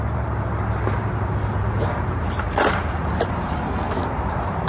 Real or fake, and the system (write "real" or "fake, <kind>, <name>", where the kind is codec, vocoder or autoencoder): fake, vocoder, BigVGAN v2